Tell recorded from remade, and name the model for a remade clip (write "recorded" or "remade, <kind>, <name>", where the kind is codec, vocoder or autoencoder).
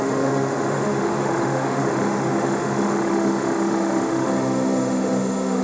remade, autoencoder, DAC-VAE